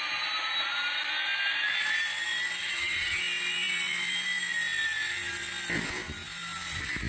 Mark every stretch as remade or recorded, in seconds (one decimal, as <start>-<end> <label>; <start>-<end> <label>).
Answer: 0.0-2.6 recorded; 2.6-3.2 remade; 3.2-7.1 recorded